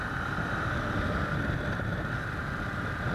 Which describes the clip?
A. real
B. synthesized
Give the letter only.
A